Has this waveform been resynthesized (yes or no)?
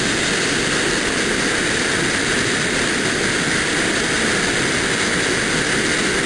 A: no